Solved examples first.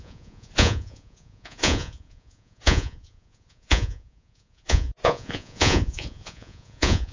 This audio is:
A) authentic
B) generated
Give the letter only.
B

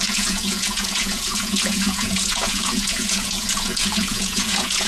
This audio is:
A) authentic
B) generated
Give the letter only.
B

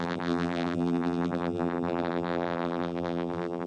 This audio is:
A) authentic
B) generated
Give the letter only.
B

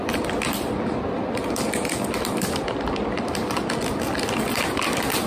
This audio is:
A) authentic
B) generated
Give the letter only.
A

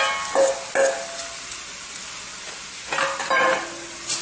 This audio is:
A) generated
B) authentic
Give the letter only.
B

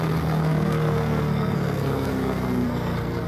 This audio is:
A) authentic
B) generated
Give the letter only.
B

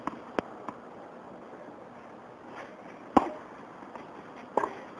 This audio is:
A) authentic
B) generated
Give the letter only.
A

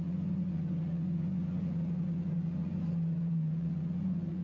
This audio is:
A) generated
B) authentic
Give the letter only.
A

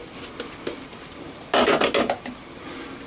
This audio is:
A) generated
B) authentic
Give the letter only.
B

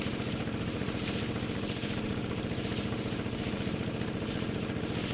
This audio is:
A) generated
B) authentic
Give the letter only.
A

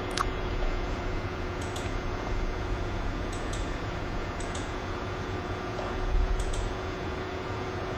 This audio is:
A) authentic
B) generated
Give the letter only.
B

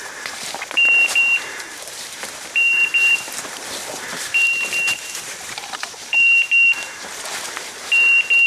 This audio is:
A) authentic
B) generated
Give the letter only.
B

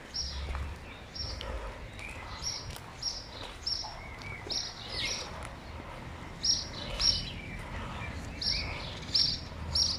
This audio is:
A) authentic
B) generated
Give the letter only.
A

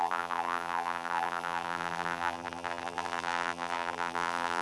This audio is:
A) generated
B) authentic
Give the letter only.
A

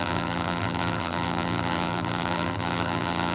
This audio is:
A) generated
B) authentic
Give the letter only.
A